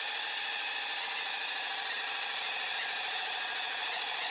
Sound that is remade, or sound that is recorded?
recorded